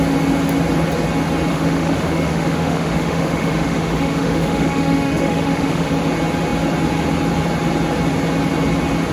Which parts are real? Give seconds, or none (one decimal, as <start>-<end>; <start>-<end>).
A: 0.0-1.5; 5.9-9.1